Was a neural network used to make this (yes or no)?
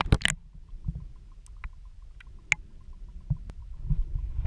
no